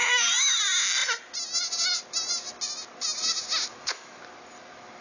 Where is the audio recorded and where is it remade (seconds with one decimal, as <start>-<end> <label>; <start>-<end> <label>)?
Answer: 0.0-0.6 remade; 0.6-3.7 recorded; 3.7-4.2 remade; 4.2-5.0 recorded